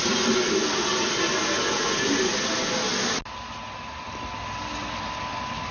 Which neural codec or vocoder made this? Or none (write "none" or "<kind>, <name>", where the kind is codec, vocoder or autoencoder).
none